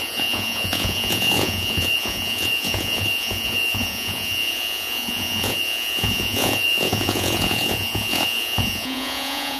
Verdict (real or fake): fake